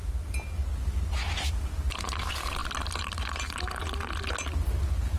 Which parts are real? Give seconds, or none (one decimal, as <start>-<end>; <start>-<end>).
0.0-5.2